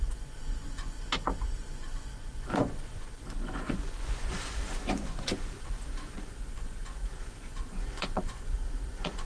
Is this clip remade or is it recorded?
remade